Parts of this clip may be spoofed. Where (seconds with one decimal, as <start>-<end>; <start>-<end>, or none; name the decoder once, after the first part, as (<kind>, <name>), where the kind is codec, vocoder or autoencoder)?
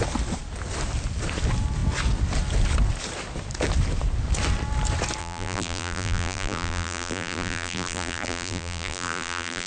5.2-9.7 (vocoder, BigVGAN v2)